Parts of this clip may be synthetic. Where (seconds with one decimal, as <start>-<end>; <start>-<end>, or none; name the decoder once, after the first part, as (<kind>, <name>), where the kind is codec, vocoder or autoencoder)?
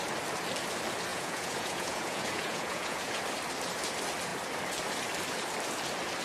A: 1.1-3.2 (vocoder, Vocos)